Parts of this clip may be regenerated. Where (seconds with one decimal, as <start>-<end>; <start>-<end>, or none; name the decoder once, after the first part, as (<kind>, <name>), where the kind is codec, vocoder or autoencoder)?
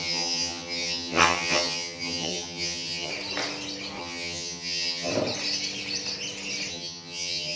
0.0-3.1 (vocoder, HiFi-GAN); 4.0-5.1; 6.7-7.6